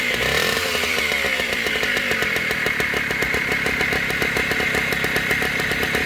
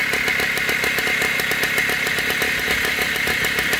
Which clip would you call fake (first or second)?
first